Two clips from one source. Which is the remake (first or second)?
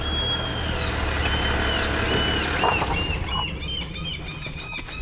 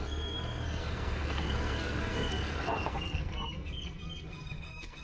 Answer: second